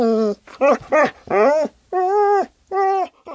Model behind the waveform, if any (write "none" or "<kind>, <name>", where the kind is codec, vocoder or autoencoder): none